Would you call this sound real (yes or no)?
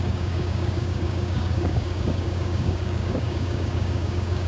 no